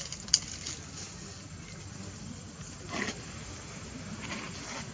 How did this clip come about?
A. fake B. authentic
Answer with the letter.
B